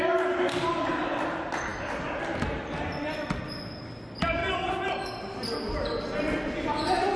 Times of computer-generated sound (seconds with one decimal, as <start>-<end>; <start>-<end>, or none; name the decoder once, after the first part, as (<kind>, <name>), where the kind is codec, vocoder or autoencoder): none